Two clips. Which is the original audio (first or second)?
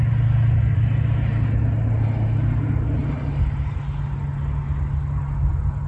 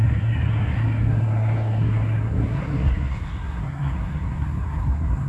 first